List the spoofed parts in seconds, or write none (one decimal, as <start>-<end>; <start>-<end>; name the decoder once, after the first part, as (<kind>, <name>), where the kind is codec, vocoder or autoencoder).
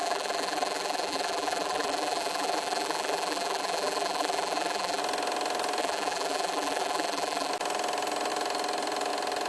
0.0-5.0 (vocoder, BigVGAN v2); 5.8-7.5